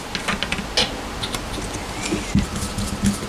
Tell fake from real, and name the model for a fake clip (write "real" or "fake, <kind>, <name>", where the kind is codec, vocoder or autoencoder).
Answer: real